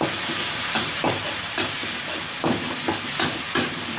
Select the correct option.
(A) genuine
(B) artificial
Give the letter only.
A